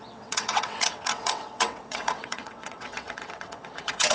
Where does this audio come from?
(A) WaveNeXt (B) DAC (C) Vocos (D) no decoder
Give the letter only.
A